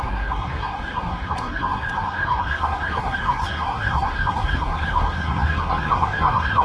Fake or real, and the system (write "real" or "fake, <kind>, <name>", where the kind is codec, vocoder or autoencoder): fake, codec, SNAC